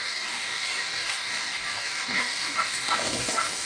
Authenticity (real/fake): fake